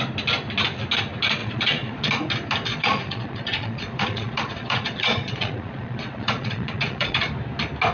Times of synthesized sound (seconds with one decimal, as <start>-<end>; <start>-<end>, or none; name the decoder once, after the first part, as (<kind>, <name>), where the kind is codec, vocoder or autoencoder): 1.4-2.1 (vocoder, Vocos); 2.7-7.3